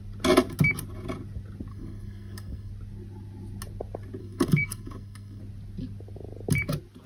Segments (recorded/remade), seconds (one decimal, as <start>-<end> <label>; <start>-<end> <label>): 0.0-1.7 recorded; 1.7-2.7 remade; 2.7-4.2 recorded; 4.2-5.4 remade; 5.4-7.1 recorded